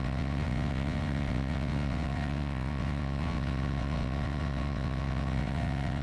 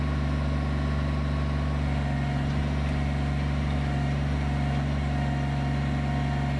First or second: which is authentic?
second